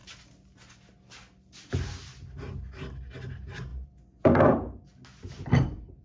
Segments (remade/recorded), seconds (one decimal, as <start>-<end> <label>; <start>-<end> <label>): 0.0-6.0 recorded